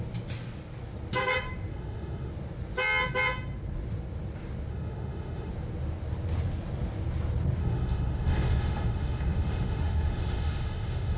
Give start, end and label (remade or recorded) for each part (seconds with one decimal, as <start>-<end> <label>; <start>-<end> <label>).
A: 0.0-1.7 recorded; 1.7-2.3 remade; 2.3-4.7 recorded; 4.7-5.5 remade; 5.5-7.6 recorded; 7.6-11.2 remade